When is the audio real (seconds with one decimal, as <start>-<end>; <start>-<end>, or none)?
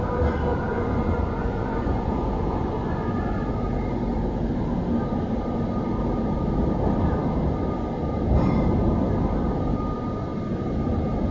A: 0.0-0.7; 3.4-11.3